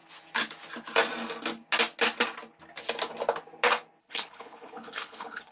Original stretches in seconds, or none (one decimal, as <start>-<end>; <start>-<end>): 0.0-4.0